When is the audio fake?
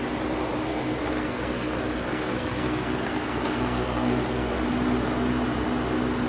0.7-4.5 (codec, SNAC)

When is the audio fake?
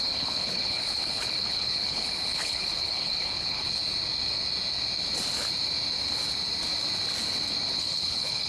0.0-3.8 (codec, HILCodec); 7.7-8.5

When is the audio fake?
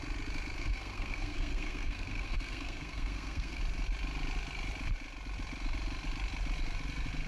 0.6-3.6 (codec, SNAC)